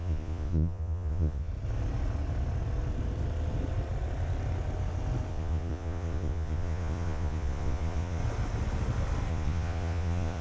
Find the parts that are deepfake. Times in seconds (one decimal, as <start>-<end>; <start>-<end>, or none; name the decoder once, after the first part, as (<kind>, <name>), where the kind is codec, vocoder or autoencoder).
0.0-1.5 (vocoder, Vocos); 5.3-8.2; 9.3-10.4